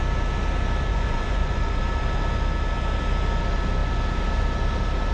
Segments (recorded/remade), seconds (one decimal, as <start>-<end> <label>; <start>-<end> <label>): 0.0-0.9 recorded; 0.9-1.8 remade; 1.8-5.1 recorded